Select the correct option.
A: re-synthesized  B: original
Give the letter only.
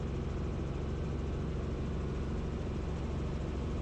B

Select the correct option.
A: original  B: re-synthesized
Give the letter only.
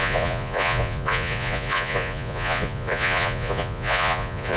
B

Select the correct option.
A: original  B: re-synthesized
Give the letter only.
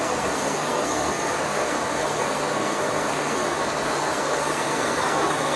B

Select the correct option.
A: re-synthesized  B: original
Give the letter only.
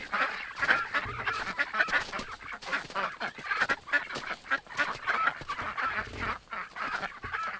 B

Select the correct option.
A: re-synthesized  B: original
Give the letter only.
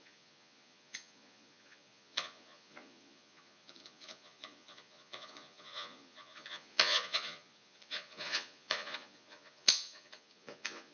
A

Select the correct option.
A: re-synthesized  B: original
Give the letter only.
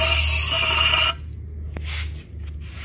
B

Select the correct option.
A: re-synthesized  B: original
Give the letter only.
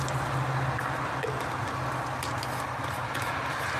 B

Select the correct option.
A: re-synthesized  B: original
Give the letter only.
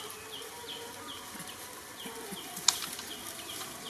B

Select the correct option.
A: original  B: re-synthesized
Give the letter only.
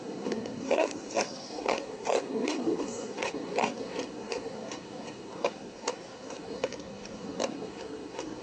B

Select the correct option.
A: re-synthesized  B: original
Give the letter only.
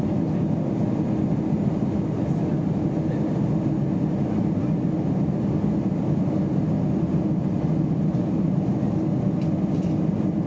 B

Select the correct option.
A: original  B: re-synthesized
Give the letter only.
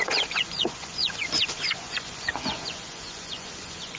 B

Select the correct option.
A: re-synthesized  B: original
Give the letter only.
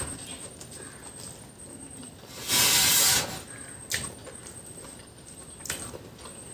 B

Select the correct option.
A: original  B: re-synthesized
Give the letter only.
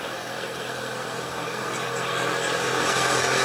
B